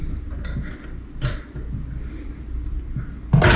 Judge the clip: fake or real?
real